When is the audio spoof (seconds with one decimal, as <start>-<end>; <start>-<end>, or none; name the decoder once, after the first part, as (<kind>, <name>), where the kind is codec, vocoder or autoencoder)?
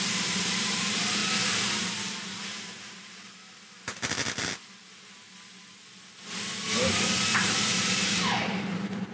0.0-1.2 (vocoder, BigVGAN v2); 2.4-3.0; 7.3-9.1